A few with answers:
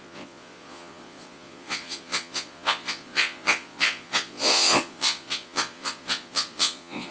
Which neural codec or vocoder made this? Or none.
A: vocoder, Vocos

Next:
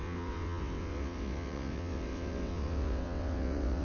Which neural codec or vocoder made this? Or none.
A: vocoder, WaveNeXt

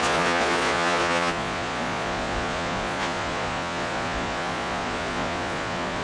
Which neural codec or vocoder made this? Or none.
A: vocoder, Vocos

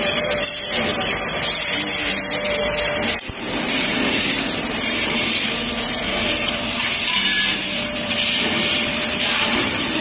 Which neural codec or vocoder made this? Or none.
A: vocoder, BigVGAN v2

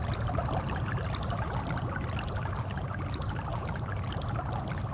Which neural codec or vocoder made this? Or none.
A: none